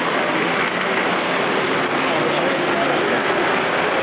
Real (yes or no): yes